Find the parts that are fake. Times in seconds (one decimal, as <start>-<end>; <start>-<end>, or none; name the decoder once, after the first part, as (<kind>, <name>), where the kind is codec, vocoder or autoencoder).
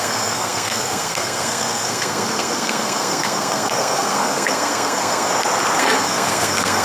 0.0-5.3 (codec, SNAC); 5.8-6.8